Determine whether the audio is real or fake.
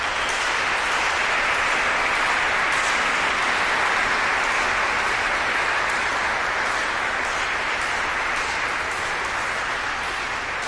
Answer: real